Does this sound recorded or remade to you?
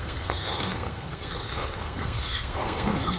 remade